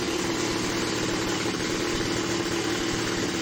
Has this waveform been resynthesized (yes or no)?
no